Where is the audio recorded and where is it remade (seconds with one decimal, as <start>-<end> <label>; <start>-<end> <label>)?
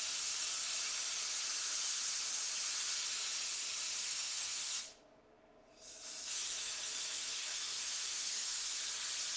0.0-1.6 recorded; 1.6-2.2 remade; 2.2-4.1 recorded; 4.1-8.8 remade; 8.8-9.4 recorded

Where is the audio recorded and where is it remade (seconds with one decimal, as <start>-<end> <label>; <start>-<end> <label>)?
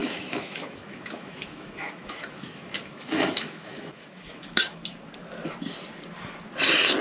0.0-4.8 remade; 4.8-7.0 recorded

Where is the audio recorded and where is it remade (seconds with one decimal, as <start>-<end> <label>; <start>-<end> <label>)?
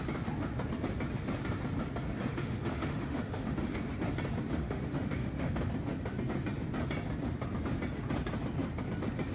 0.0-2.3 recorded; 2.3-3.8 remade; 3.8-4.6 recorded; 4.6-5.6 remade; 5.6-9.3 recorded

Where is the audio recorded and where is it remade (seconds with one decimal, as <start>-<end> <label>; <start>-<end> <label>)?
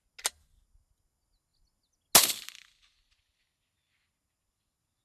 0.0-5.0 recorded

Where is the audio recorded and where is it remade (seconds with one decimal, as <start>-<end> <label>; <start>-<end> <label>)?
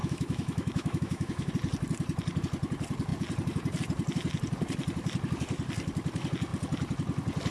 0.0-1.5 remade; 1.5-7.5 recorded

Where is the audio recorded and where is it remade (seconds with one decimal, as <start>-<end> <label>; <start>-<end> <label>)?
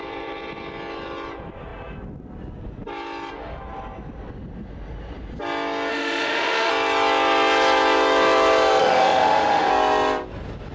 0.0-5.9 recorded; 5.9-6.7 remade; 6.7-8.8 recorded; 8.8-9.7 remade; 9.7-10.7 recorded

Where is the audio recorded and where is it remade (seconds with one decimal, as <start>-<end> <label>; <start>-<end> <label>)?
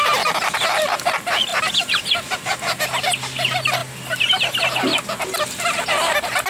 0.0-6.5 recorded